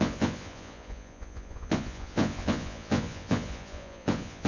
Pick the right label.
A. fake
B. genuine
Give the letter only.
A